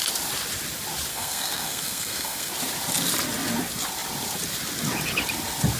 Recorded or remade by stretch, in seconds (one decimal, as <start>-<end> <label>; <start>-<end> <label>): 0.0-1.1 recorded; 1.1-2.5 remade; 2.5-5.8 recorded